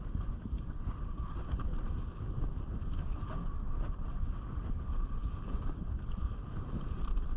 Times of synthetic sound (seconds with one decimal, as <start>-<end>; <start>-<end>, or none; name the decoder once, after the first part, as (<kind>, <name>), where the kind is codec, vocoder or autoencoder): none